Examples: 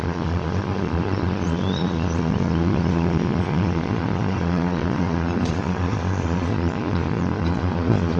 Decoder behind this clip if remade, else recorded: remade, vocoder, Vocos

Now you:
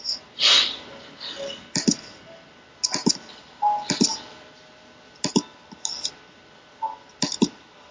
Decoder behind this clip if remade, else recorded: recorded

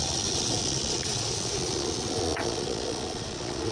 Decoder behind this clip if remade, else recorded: remade, vocoder, Vocos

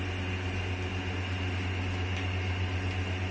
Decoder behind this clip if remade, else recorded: recorded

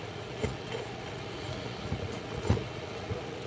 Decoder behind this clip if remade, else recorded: remade, vocoder, Vocos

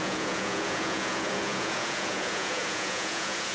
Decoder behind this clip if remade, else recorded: remade, vocoder, Vocos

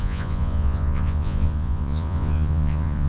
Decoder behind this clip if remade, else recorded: remade, vocoder, Vocos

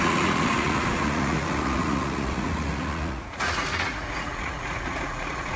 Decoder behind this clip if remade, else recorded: remade, vocoder, Vocos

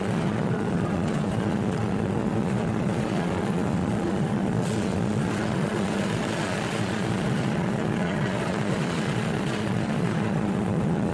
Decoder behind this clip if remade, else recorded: remade, vocoder, Vocos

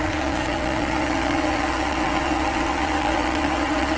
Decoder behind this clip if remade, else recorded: remade, vocoder, Vocos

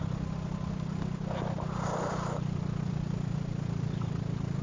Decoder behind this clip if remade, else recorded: recorded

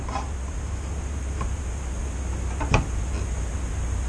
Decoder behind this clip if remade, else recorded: recorded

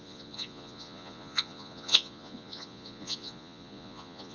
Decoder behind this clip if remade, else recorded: remade, vocoder, Vocos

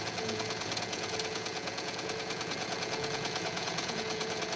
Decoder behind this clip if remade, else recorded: remade, vocoder, Vocos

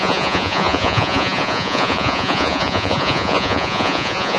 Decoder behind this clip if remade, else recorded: remade, vocoder, Vocos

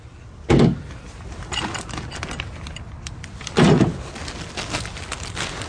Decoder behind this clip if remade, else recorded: recorded